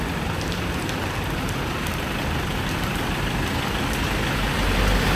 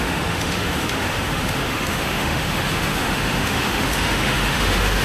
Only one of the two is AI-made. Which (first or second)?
second